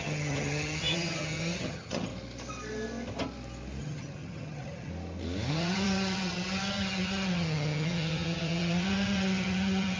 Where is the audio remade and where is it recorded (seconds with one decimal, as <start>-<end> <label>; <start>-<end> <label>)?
0.0-2.1 remade; 2.1-3.8 recorded; 3.8-4.9 remade; 4.9-5.5 recorded; 5.5-10.0 remade